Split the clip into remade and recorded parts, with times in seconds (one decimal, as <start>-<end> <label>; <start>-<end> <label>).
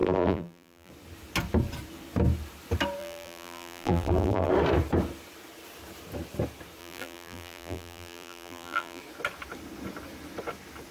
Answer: 0.0-0.9 remade; 0.9-3.0 recorded; 3.0-4.5 remade; 4.5-6.8 recorded; 6.8-9.0 remade; 9.0-10.9 recorded